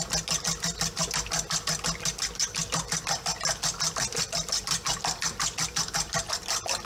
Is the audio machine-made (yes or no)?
no